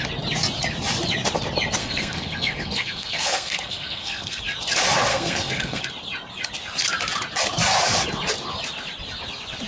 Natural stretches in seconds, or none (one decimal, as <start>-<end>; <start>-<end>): 0.0-1.8; 4.4-5.1; 5.8-9.7